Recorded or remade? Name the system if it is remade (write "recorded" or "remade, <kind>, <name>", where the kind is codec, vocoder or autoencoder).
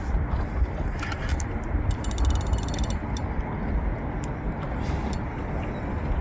recorded